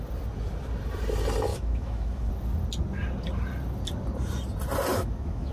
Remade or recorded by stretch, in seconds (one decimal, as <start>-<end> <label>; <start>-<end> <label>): 0.0-1.5 recorded; 1.5-2.3 remade; 2.3-4.9 recorded; 4.9-5.5 remade